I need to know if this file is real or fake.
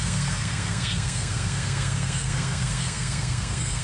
fake